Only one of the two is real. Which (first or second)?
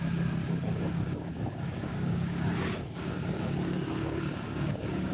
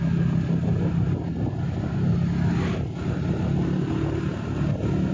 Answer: second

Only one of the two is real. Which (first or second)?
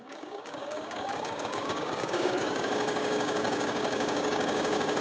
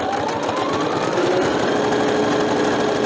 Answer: second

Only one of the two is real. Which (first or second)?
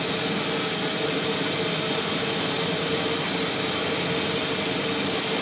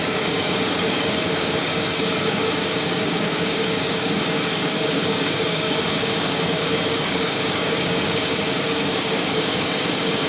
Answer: first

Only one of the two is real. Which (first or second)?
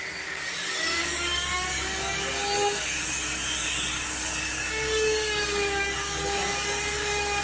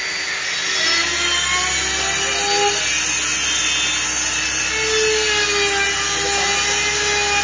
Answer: second